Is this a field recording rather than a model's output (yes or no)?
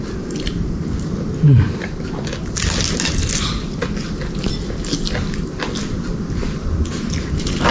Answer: yes